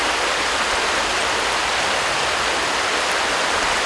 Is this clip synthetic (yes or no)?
no